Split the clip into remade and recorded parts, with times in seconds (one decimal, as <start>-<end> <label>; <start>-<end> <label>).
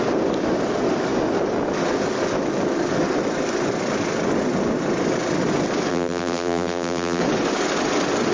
0.0-5.9 recorded; 5.9-7.2 remade; 7.2-8.3 recorded